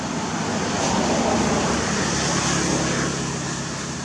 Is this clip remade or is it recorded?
recorded